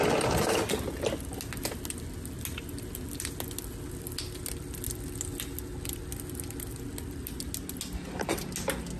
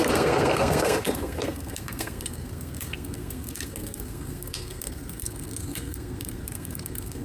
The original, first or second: first